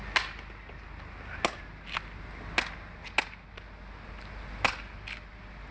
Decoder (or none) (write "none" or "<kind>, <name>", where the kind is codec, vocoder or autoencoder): none